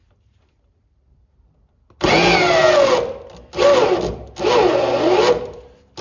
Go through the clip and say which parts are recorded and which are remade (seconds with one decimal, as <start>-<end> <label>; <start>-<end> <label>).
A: 0.0-6.0 recorded

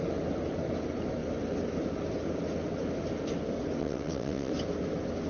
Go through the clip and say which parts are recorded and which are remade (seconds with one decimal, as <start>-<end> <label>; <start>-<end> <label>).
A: 0.0-3.8 recorded; 3.8-4.5 remade; 4.5-5.3 recorded

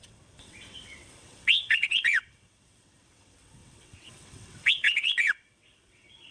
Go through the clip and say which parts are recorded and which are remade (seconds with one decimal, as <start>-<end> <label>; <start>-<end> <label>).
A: 0.0-6.3 remade